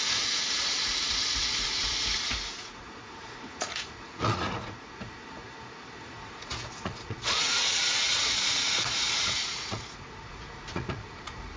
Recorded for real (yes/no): no